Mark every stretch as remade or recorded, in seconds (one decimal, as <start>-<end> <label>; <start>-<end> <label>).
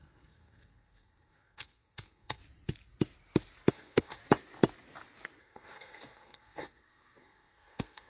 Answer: 0.0-2.4 remade; 2.4-3.7 recorded; 3.7-4.2 remade; 4.2-5.4 recorded; 5.4-8.1 remade